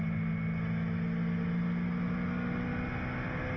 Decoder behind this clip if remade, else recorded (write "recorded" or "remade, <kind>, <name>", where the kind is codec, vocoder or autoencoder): recorded